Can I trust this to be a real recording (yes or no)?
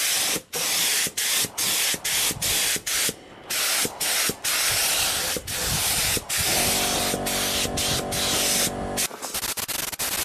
yes